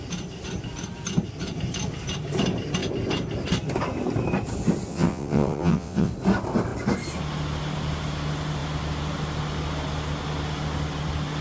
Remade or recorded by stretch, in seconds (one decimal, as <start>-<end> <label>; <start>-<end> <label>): 0.0-4.9 recorded; 4.9-6.1 remade; 6.1-11.4 recorded

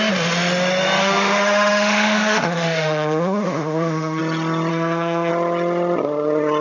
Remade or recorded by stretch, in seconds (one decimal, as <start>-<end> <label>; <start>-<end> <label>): 0.0-1.0 recorded; 1.0-4.2 remade; 4.2-4.7 recorded; 4.7-5.3 remade; 5.3-6.6 recorded

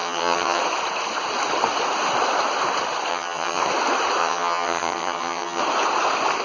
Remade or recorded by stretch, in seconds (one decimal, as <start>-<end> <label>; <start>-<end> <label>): 0.0-0.6 remade; 0.6-3.1 recorded; 3.1-3.6 remade; 3.6-4.2 recorded; 4.2-5.6 remade; 5.6-6.4 recorded

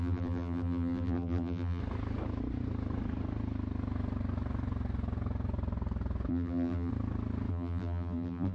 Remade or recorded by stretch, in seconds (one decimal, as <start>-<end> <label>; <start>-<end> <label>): 0.0-1.8 remade; 1.8-6.3 recorded; 6.3-6.9 remade; 6.9-7.5 recorded; 7.5-8.5 remade

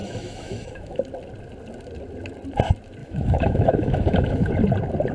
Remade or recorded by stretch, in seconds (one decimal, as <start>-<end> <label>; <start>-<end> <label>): 0.0-1.0 remade; 1.0-3.0 recorded; 3.0-4.5 remade; 4.5-5.1 recorded

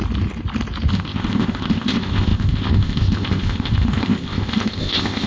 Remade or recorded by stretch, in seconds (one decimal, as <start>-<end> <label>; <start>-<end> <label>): 0.0-0.9 recorded; 0.9-5.3 remade

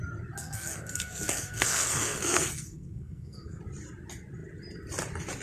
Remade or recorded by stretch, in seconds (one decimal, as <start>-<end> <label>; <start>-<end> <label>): 0.0-0.4 recorded; 0.4-3.6 remade; 3.6-5.4 recorded